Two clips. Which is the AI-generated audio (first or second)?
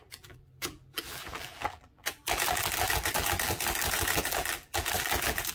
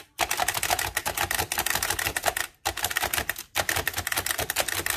first